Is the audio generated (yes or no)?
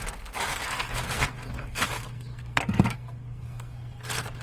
yes